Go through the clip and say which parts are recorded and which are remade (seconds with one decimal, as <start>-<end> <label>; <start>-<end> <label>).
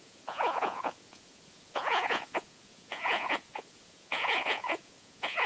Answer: 0.0-5.5 remade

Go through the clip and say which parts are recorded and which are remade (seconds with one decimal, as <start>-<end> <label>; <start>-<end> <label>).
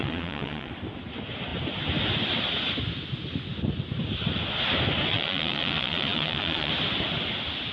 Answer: 0.0-0.7 remade; 0.7-5.1 recorded; 5.1-6.7 remade; 6.7-7.7 recorded